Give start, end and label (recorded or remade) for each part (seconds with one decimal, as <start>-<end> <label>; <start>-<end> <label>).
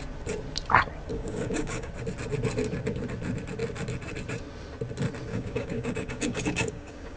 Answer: 0.0-1.1 recorded; 1.1-1.9 remade; 1.9-5.3 recorded; 5.3-7.2 remade